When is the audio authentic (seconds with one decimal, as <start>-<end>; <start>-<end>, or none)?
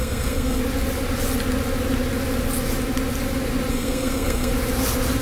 0.6-3.7; 4.5-5.2